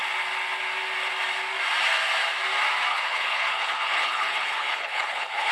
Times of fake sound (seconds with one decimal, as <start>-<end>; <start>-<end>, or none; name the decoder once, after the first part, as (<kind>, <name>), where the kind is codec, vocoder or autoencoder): 2.9-5.5 (codec, HILCodec)